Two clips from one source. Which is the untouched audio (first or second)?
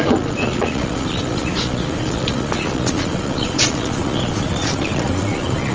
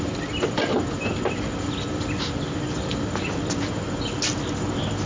second